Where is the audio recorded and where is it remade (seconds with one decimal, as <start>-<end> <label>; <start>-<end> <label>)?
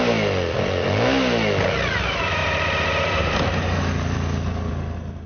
0.0-5.3 recorded